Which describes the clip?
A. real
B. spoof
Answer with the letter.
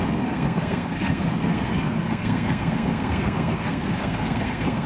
B